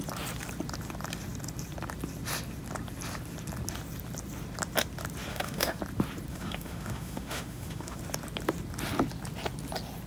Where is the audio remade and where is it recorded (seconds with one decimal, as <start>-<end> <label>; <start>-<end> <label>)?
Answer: 0.0-5.3 recorded; 5.3-5.8 remade; 5.8-6.3 recorded; 6.3-8.0 remade; 8.0-10.1 recorded